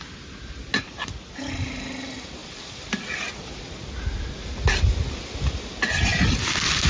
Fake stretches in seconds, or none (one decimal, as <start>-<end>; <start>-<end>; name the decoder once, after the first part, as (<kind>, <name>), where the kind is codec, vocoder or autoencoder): none